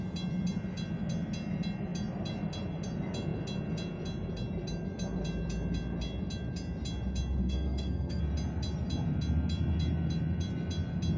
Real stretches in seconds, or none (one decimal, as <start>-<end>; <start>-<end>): 0.0-7.4; 8.2-11.2